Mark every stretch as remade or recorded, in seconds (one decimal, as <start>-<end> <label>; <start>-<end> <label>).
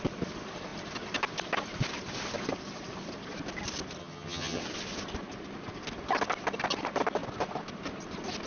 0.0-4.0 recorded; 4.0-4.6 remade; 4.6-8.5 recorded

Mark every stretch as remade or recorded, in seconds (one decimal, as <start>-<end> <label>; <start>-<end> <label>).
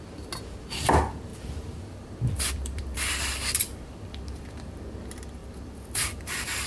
0.0-1.3 recorded; 1.3-4.8 remade; 4.8-5.4 recorded; 5.4-6.7 remade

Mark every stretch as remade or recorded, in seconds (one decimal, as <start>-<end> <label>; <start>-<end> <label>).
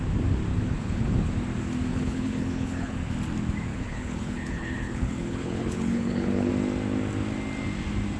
0.0-0.5 recorded; 0.5-1.3 remade; 1.3-1.9 recorded; 1.9-3.1 remade; 3.1-3.7 recorded; 3.7-6.5 remade; 6.5-8.2 recorded